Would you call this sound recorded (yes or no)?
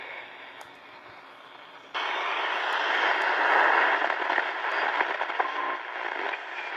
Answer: yes